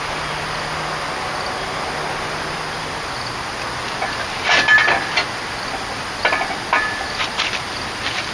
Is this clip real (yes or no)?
yes